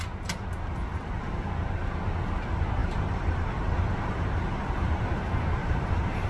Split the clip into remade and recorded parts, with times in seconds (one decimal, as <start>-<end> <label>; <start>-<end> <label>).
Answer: 0.0-0.9 recorded; 0.9-1.5 remade; 1.5-2.8 recorded; 2.8-5.1 remade; 5.1-5.6 recorded; 5.6-6.3 remade